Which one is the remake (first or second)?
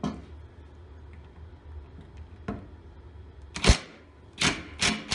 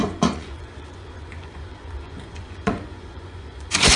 second